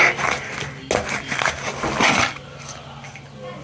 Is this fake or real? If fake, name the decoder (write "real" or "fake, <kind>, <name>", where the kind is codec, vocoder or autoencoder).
real